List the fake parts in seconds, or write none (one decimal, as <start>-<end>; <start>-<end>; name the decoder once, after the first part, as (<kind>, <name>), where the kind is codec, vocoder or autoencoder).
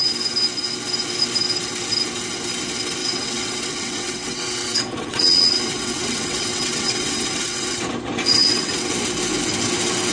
3.0-7.8 (vocoder, WaveNeXt); 8.4-8.9